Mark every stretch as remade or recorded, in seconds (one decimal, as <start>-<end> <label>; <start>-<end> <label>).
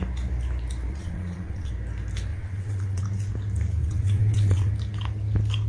0.0-0.9 recorded; 0.9-1.7 remade; 1.7-2.3 recorded; 2.3-3.0 remade; 3.0-3.8 recorded; 3.8-4.7 remade; 4.7-5.7 recorded